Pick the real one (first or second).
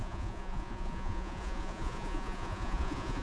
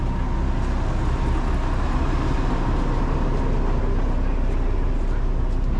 second